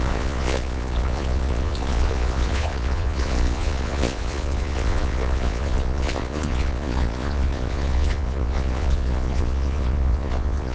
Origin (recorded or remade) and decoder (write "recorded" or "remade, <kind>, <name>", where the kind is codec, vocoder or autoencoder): remade, vocoder, Vocos